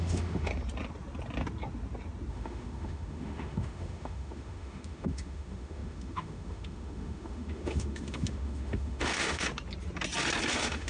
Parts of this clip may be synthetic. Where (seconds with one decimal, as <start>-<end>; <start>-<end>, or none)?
0.0-0.5; 2.3-9.5; 10.5-10.9